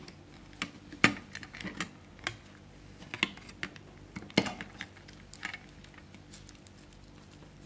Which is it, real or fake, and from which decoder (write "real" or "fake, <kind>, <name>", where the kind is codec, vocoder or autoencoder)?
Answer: real